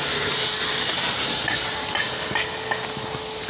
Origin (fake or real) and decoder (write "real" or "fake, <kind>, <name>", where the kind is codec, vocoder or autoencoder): real